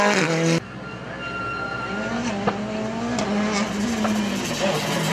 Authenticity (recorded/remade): recorded